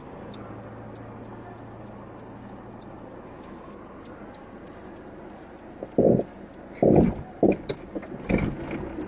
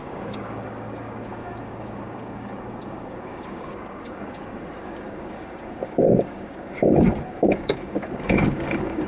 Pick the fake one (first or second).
second